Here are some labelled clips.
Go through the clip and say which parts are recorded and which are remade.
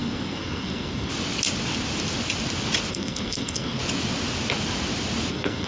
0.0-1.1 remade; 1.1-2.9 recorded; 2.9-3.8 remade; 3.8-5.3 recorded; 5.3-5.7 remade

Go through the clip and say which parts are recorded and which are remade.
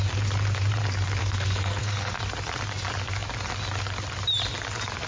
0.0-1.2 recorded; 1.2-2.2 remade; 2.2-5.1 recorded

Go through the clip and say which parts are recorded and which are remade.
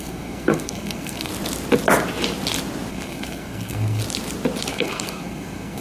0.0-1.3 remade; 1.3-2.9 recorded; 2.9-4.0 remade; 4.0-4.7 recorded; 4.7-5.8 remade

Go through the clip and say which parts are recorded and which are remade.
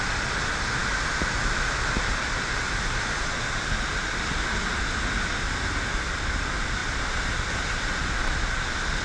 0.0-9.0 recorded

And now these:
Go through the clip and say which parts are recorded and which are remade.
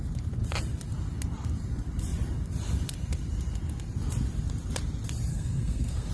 0.0-5.3 recorded; 5.3-6.1 remade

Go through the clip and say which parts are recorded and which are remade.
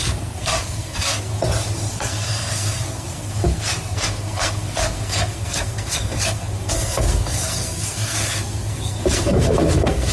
0.0-1.3 remade; 1.3-1.9 recorded; 1.9-10.1 remade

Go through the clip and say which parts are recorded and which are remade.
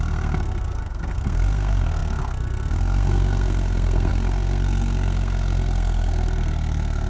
0.0-7.1 remade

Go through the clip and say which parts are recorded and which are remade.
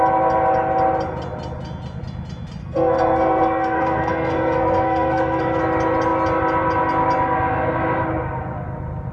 0.0-2.6 recorded; 2.6-5.6 remade; 5.6-9.1 recorded